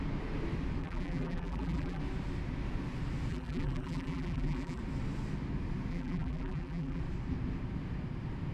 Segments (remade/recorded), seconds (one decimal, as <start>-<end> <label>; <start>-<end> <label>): 0.0-0.8 recorded; 0.8-2.0 remade; 2.0-3.3 recorded; 3.3-4.8 remade; 4.8-5.9 recorded; 5.9-7.0 remade; 7.0-8.5 recorded